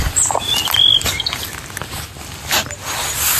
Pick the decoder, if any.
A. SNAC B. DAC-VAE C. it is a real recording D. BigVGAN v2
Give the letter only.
C